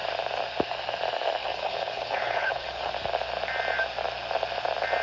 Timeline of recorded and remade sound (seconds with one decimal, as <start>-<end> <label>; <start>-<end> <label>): 0.0-1.4 recorded; 1.4-2.9 remade; 2.9-5.0 recorded